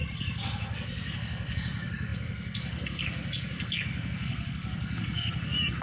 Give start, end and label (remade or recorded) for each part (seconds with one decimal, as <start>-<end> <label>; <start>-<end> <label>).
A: 0.0-5.8 remade